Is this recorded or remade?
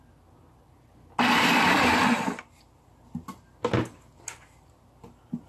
recorded